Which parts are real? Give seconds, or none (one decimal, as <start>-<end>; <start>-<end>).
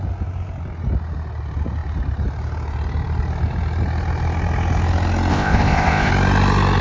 0.0-5.3; 6.1-6.8